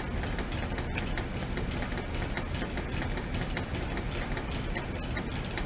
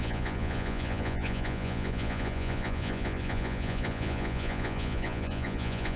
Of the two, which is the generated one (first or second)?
second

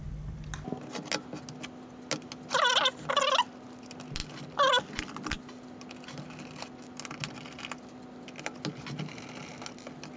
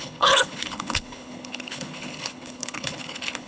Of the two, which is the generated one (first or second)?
second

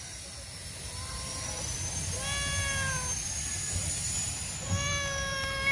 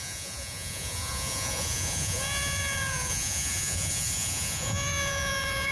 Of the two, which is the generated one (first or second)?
second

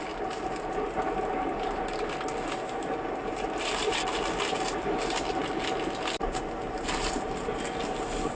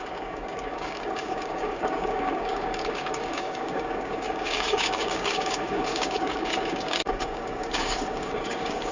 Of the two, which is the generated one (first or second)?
second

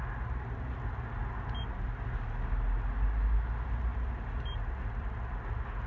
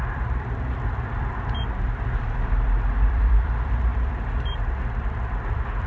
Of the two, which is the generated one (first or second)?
second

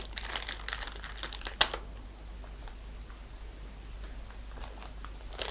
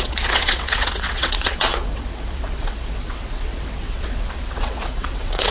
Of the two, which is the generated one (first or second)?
second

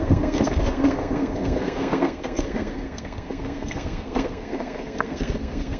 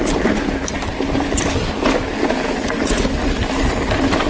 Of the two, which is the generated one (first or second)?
first